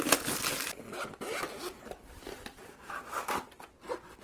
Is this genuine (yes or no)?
yes